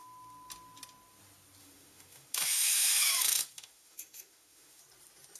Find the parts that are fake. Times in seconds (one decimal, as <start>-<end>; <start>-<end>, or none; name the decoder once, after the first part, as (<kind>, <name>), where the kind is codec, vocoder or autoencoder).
1.6-4.8 (autoencoder, DAC-VAE)